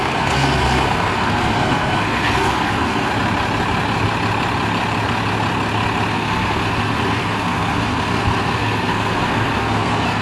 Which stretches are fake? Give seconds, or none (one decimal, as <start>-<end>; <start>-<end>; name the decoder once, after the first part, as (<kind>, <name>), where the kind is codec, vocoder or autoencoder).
0.0-3.1 (codec, SNAC); 6.1-10.2